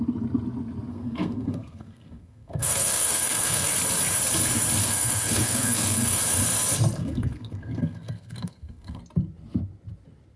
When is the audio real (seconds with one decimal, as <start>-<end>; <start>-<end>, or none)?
0.0-0.9; 3.7-4.8; 6.2-7.0; 9.0-10.4